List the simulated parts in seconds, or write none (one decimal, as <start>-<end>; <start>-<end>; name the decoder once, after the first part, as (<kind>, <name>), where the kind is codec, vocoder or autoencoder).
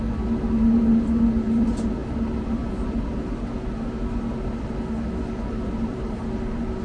none